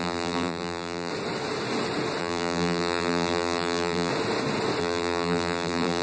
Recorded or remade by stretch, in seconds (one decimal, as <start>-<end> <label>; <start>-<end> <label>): 0.0-1.1 remade; 1.1-2.2 recorded; 2.2-4.1 remade; 4.1-4.8 recorded; 4.8-6.0 remade